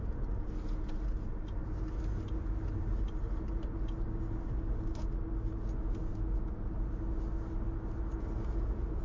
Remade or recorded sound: recorded